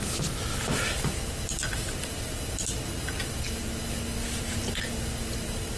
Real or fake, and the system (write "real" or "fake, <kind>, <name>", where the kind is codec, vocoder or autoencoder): real